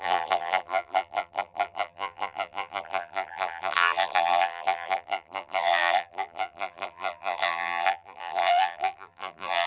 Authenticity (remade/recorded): remade